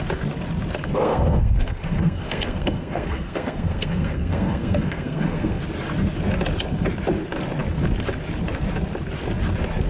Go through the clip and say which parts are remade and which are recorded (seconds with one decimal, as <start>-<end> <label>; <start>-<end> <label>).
0.0-0.8 recorded; 0.8-5.6 remade; 5.6-9.9 recorded